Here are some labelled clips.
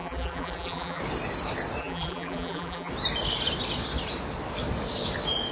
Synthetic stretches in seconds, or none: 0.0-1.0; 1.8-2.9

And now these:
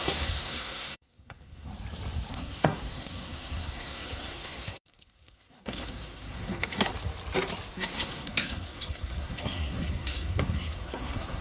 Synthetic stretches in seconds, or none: 0.0-1.7; 2.3-6.9; 7.7-11.4

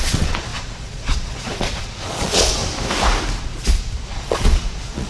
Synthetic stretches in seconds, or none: 0.0-2.6; 3.4-5.1

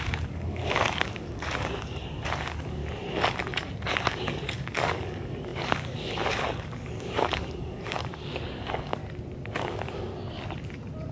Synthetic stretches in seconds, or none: 0.0-2.8; 3.9-9.0; 9.5-10.1

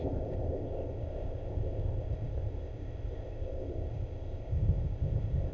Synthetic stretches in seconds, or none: 0.0-5.5